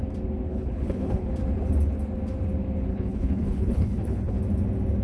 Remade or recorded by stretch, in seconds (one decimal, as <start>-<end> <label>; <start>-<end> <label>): 0.0-0.5 recorded; 0.5-1.3 remade; 1.3-2.9 recorded; 2.9-4.4 remade; 4.4-5.0 recorded